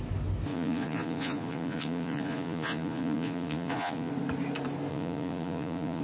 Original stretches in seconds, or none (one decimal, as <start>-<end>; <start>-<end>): 0.0-0.5; 4.1-4.9